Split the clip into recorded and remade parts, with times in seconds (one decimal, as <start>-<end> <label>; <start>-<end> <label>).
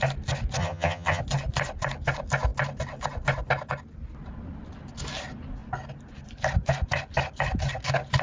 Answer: 0.0-0.6 recorded; 0.6-1.2 remade; 1.2-8.2 recorded